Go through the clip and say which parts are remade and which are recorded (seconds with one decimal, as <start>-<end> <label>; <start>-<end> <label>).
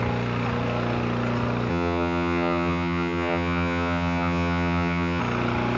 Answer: 0.0-1.7 recorded; 1.7-5.2 remade; 5.2-5.8 recorded